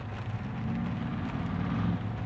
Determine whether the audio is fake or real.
real